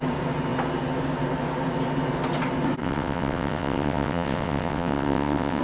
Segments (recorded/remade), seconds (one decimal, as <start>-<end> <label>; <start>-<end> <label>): 0.0-2.8 recorded; 2.8-5.6 remade